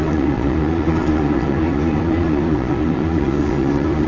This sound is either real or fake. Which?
fake